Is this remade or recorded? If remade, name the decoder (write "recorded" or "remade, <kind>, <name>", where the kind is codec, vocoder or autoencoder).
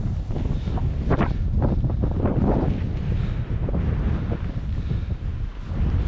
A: recorded